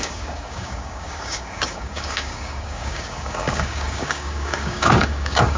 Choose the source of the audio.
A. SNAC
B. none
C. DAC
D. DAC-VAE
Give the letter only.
C